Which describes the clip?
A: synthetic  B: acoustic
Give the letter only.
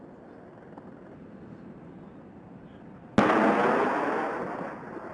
B